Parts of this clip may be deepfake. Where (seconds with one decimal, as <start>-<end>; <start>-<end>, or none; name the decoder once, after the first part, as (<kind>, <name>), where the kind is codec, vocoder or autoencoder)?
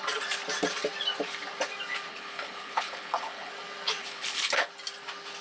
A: 2.1-3.5 (codec, HILCodec); 4.0-4.7